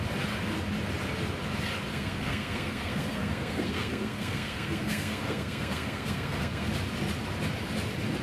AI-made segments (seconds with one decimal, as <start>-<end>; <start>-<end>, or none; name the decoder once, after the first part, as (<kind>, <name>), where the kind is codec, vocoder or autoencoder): 1.9-6.7 (codec, SNAC)